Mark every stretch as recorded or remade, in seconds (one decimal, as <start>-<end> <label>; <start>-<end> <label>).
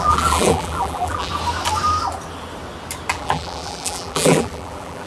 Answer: 0.0-1.3 remade; 1.3-3.1 recorded; 3.1-5.1 remade